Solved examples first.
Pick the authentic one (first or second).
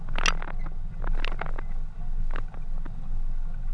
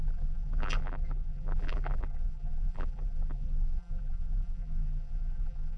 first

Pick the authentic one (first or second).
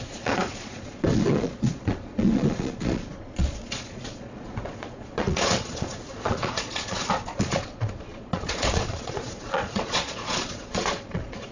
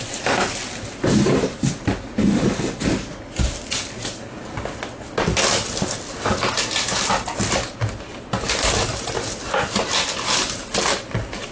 second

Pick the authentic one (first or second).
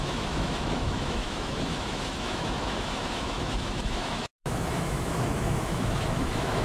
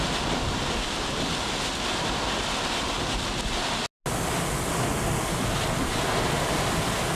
second